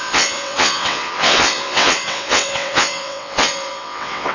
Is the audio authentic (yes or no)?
no